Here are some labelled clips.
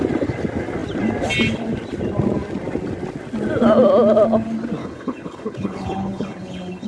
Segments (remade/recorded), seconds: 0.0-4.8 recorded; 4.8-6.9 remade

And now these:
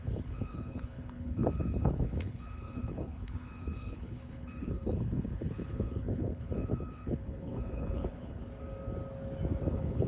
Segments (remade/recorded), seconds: 0.0-8.4 remade; 8.4-9.7 recorded; 9.7-10.1 remade

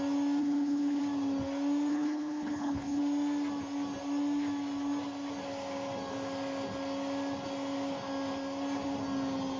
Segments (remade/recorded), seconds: 0.0-0.4 recorded; 0.4-1.0 remade; 1.0-1.9 recorded; 1.9-3.0 remade; 3.0-9.6 recorded

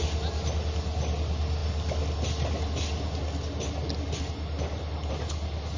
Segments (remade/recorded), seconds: 0.0-5.8 recorded

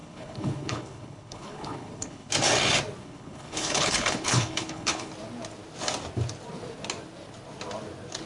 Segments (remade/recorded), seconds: 0.0-2.3 remade; 2.3-3.0 recorded; 3.0-5.1 remade; 5.1-8.3 recorded

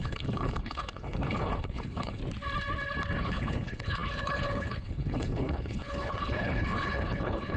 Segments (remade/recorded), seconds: 0.0-2.2 remade; 2.2-3.2 recorded; 3.2-7.6 remade

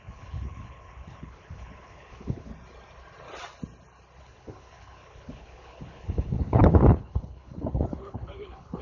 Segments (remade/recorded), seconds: 0.0-2.5 remade; 2.5-4.2 recorded; 4.2-8.8 remade